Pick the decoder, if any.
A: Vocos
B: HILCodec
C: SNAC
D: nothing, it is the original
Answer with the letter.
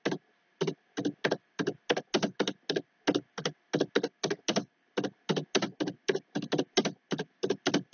D